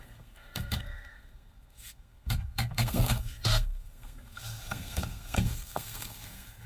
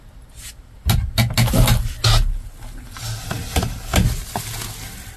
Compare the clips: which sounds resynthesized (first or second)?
first